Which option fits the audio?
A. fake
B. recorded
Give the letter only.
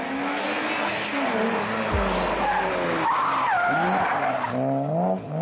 B